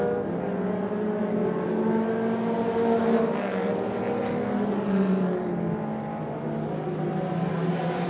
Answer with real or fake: real